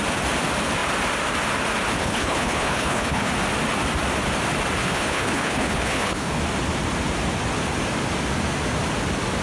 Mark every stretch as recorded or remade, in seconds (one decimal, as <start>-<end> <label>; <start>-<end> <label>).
0.0-2.0 recorded; 2.0-3.3 remade; 3.3-4.8 recorded; 4.8-6.4 remade; 6.4-9.4 recorded